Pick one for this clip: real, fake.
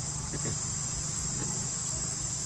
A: real